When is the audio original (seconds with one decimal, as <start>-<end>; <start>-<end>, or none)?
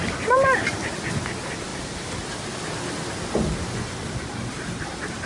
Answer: 0.0-5.3